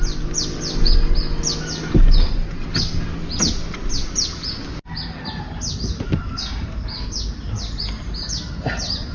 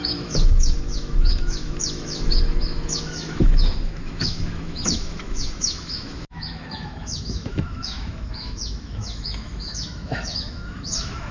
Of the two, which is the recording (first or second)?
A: first